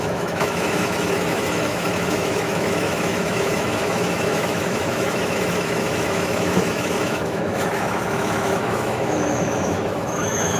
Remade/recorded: remade